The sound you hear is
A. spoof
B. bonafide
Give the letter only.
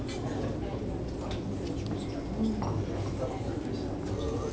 B